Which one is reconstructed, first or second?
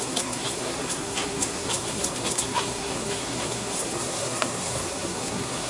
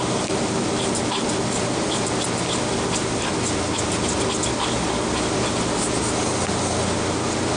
first